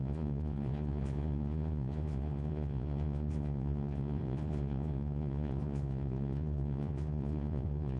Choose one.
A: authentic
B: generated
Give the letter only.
B